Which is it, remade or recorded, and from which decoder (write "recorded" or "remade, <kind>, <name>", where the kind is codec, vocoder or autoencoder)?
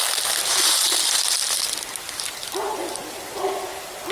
remade, vocoder, BigVGAN v2